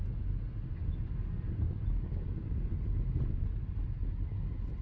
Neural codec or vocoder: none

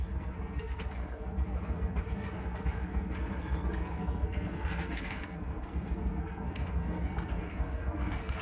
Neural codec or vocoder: codec, SNAC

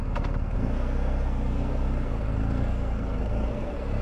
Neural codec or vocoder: codec, SNAC